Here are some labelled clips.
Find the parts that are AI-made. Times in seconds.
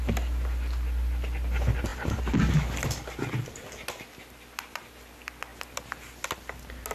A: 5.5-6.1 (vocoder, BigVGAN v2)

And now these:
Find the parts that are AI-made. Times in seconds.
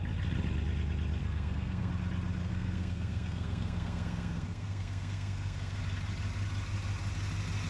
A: 1.2-1.9 (codec, SNAC); 2.4-5.8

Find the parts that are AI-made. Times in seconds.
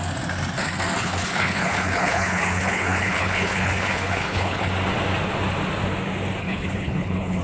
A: 1.0-4.7 (codec, HILCodec); 6.4-7.4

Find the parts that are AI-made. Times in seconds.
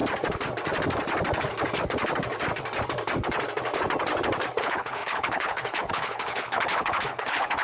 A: 4.6-7.6 (codec, HILCodec)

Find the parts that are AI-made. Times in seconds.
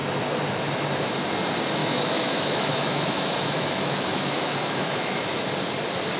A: 1.8-5.5 (autoencoder, DAC-VAE)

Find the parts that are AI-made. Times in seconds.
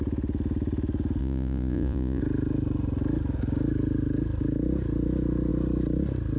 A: 1.2-2.2 (vocoder, Vocos)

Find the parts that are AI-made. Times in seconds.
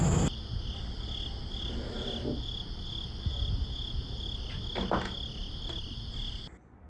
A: none